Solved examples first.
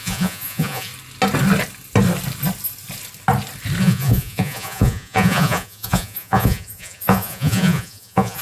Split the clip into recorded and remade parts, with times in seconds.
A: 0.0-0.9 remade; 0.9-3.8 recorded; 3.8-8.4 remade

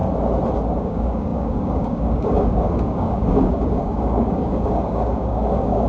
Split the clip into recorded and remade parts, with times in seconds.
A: 0.0-0.8 recorded; 0.8-5.9 remade